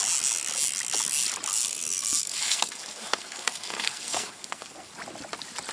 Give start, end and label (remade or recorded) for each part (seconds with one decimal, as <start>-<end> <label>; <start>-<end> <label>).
0.0-1.5 recorded; 1.5-4.9 remade; 4.9-5.7 recorded